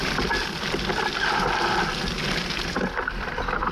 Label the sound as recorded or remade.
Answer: recorded